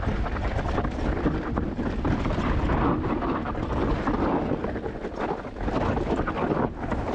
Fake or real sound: real